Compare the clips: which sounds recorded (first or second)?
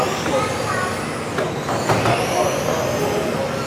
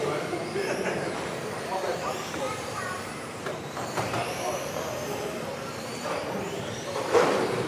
first